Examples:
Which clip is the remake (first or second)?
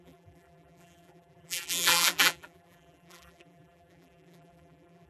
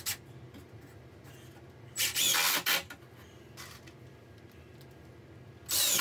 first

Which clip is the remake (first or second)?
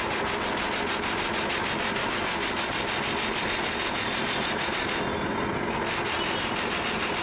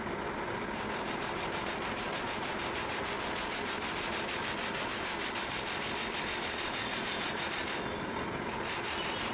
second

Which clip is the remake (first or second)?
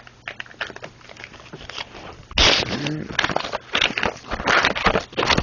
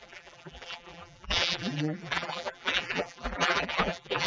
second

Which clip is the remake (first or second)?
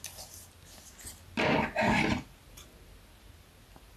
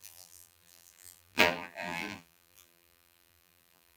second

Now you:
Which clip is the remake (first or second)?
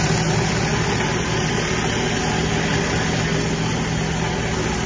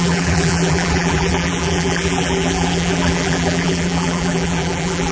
second